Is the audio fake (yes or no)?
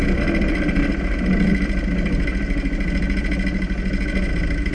no